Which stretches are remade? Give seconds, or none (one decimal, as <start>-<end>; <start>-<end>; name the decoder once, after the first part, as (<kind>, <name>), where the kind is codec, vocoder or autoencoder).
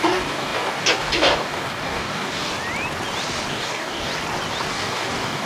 0.0-2.5 (codec, DAC); 3.5-4.1; 4.7-5.5